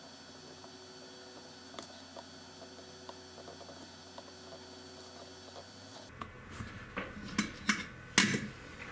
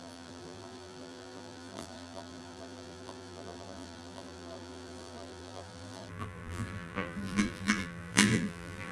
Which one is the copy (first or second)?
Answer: second